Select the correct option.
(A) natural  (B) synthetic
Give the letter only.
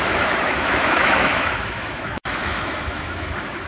B